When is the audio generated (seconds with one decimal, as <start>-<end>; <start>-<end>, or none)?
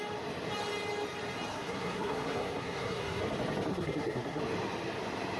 1.5-3.2; 3.7-4.4